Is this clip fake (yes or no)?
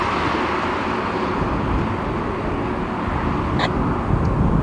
no